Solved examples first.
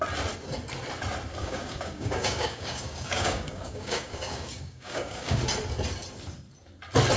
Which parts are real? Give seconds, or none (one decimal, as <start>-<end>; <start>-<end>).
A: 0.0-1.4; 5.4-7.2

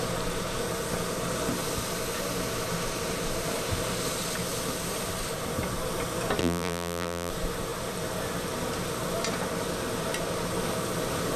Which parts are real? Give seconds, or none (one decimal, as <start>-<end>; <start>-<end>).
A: 0.0-6.4; 7.3-11.4

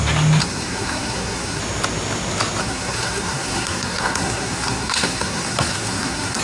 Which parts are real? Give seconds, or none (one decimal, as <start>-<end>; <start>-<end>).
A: 0.0-0.4; 1.6-2.6

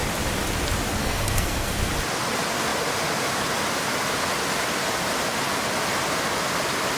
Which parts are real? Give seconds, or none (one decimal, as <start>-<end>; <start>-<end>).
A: 0.0-1.0; 1.9-7.0

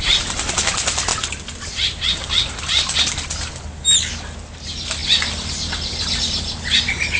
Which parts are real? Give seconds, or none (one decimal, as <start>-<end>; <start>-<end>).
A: 0.0-7.2